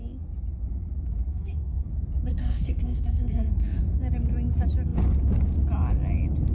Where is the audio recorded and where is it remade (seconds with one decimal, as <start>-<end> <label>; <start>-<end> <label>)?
0.0-1.3 recorded; 1.3-1.9 remade; 1.9-2.3 recorded; 2.3-3.8 remade; 3.8-6.5 recorded

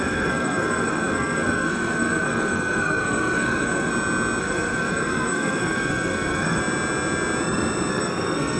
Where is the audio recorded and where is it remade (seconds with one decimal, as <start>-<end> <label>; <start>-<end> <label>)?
0.0-3.9 remade; 3.9-4.4 recorded; 4.4-6.6 remade; 6.6-7.9 recorded; 7.9-8.6 remade

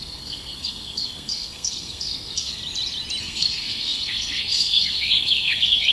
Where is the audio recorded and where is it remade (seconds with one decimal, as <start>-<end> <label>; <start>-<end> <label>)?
0.0-2.6 remade; 2.6-3.2 recorded; 3.2-5.9 remade